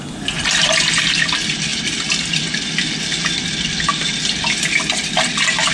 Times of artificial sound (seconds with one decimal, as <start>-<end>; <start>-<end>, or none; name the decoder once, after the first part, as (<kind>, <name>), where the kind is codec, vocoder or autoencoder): none